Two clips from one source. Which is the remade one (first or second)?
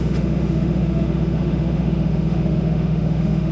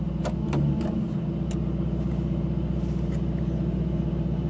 first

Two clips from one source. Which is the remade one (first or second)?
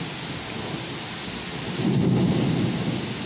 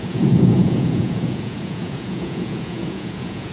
second